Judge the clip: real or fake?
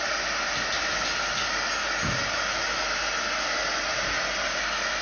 real